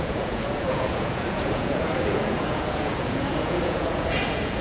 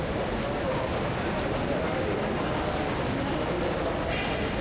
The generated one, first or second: first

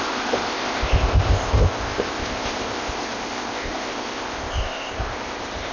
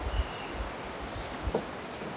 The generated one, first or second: first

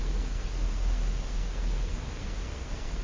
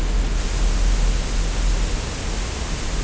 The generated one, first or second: first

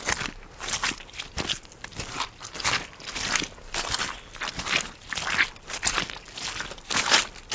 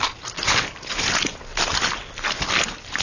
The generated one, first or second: second